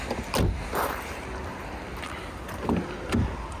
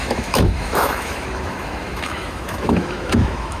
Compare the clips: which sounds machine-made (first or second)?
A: second